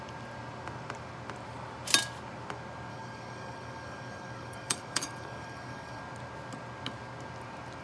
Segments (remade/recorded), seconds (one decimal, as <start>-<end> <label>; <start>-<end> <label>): 0.0-2.9 recorded; 2.9-6.0 remade; 6.0-7.8 recorded